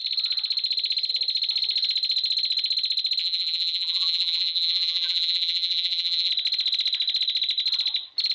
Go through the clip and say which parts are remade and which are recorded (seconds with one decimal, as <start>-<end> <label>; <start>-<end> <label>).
0.0-3.2 recorded; 3.2-6.3 remade; 6.3-8.3 recorded